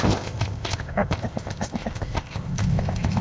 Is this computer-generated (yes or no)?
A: yes